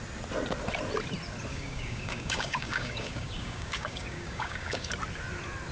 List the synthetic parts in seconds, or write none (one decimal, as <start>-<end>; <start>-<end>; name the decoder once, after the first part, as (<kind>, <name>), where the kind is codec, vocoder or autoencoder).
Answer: 1.5-4.9 (codec, DAC)